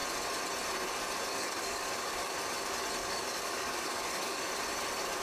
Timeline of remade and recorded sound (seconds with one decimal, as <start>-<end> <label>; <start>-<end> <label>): 0.0-1.3 recorded; 1.3-2.4 remade; 2.4-3.0 recorded; 3.0-4.5 remade; 4.5-5.2 recorded